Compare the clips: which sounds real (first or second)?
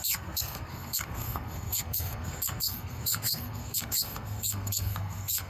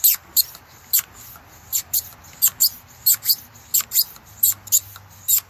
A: second